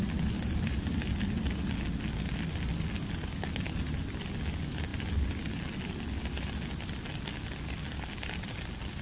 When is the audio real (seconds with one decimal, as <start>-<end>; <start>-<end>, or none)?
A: 0.0-9.0